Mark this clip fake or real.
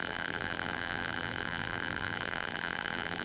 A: fake